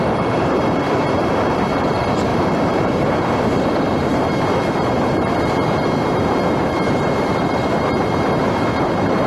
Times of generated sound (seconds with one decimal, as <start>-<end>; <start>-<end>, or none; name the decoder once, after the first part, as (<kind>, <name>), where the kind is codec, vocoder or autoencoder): 0.0-9.3 (vocoder, BigVGAN v2)